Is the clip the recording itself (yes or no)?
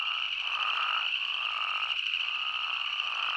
yes